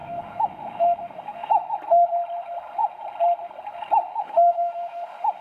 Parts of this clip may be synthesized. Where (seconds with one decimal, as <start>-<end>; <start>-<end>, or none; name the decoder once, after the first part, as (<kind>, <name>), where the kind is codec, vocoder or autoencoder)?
0.0-1.5 (autoencoder, DAC-VAE); 4.1-5.4